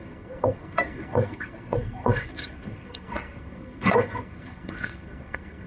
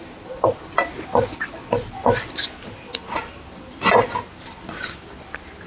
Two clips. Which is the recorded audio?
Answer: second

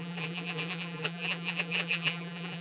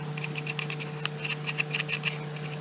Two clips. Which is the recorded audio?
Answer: second